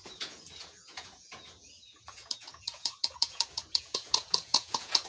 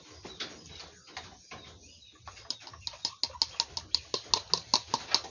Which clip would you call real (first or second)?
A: second